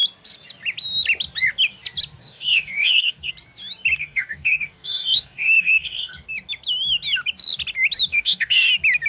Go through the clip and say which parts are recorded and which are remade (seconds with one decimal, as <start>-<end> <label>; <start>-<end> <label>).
0.0-2.2 recorded; 2.2-3.3 remade; 3.3-4.0 recorded; 4.0-6.1 remade; 6.1-8.1 recorded; 8.1-8.7 remade; 8.7-9.1 recorded